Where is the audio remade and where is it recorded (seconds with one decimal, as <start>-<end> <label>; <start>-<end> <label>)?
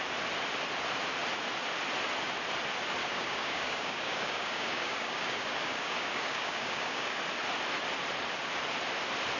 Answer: 0.0-3.0 recorded; 3.0-7.2 remade; 7.2-9.4 recorded